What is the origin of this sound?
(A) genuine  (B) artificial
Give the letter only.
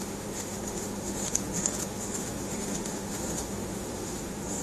B